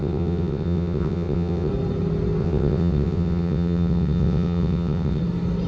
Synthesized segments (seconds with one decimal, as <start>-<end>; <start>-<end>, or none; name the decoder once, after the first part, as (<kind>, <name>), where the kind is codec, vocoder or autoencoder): 0.0-1.7 (vocoder, WaveNeXt); 2.4-5.2